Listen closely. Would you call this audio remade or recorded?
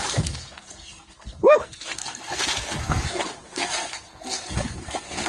remade